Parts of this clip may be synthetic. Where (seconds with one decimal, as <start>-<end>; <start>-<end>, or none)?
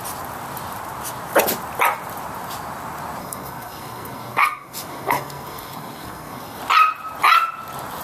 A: 3.2-6.6